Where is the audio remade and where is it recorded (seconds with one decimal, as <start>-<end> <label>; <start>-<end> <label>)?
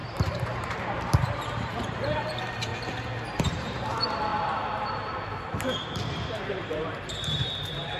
0.0-2.7 remade; 2.7-3.4 recorded; 3.4-8.0 remade